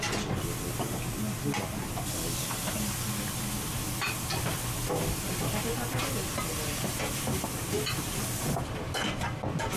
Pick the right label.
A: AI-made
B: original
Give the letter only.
B